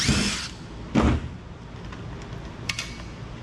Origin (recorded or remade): recorded